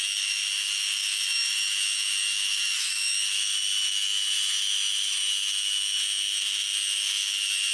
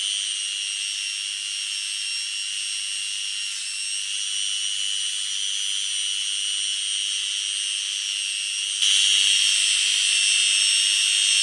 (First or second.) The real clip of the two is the second